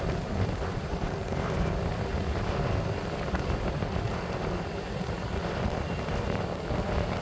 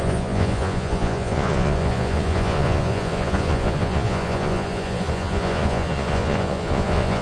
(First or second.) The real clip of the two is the first